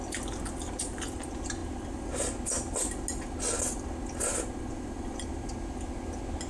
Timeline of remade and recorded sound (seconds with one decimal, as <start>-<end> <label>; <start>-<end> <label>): 0.0-6.5 recorded